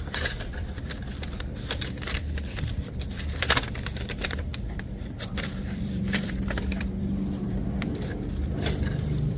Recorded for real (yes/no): no